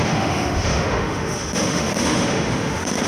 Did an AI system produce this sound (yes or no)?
yes